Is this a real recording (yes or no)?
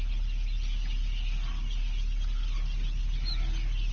yes